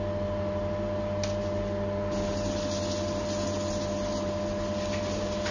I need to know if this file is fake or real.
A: real